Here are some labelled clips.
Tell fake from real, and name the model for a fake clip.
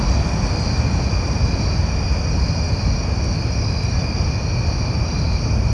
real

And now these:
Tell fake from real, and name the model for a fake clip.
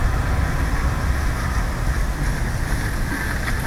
real